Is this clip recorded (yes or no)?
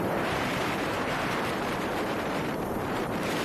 no